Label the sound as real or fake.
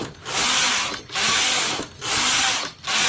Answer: real